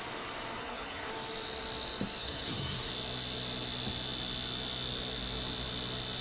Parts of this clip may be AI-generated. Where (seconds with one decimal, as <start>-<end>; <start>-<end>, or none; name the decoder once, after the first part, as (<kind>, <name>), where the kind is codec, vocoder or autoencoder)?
0.6-1.1 (codec, SNAC); 2.2-2.9